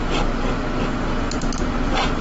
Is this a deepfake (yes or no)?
no